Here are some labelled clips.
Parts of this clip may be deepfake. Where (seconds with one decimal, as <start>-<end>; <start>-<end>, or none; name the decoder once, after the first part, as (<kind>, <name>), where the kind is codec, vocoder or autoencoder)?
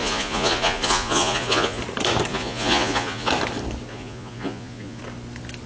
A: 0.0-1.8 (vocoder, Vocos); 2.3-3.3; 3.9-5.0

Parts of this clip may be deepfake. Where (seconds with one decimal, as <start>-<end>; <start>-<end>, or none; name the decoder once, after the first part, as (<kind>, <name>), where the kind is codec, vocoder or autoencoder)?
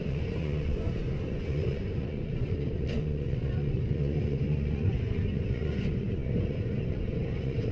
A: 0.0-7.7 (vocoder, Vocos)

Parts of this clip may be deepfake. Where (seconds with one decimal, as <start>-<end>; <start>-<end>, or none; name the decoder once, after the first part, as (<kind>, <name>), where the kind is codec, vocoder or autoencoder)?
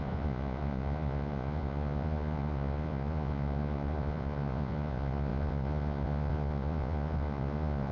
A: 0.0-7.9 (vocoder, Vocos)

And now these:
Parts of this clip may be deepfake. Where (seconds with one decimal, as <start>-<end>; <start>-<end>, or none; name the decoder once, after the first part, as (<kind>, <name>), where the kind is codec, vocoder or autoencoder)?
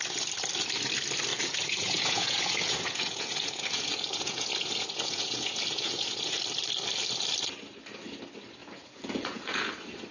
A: 1.3-6.4 (vocoder, Vocos); 8.6-9.7